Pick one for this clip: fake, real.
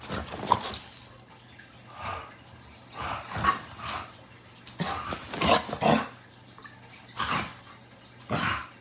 real